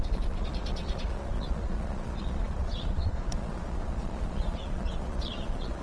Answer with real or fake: fake